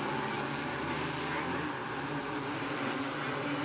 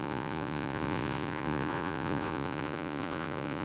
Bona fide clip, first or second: first